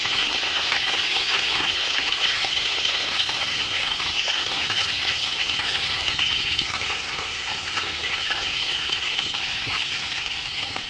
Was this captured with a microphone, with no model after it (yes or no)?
no